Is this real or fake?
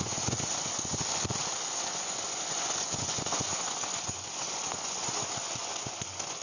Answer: fake